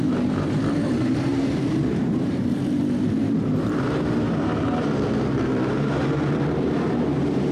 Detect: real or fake fake